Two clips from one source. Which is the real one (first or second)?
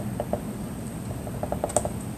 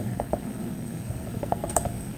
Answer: first